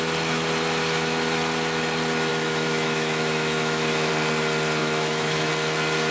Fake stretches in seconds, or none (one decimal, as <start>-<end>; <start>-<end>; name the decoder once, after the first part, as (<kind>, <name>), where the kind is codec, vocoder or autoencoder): 2.3-4.1 (autoencoder, DAC-VAE); 4.8-5.5